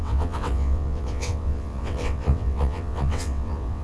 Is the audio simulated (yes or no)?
yes